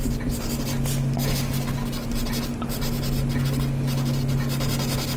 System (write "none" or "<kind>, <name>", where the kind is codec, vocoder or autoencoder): none